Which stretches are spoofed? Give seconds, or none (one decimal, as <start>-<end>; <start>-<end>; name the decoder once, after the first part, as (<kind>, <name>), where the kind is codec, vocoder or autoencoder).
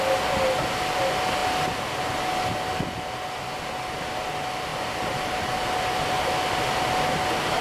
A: none